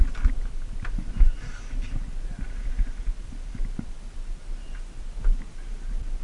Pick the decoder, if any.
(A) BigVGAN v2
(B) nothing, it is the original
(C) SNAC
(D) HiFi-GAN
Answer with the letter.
B